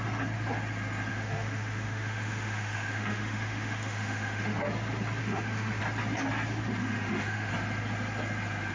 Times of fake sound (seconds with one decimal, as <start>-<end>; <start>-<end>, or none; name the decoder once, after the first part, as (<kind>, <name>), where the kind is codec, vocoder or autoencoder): 1.1-4.6 (autoencoder, DAC-VAE); 5.2-5.8; 6.8-7.5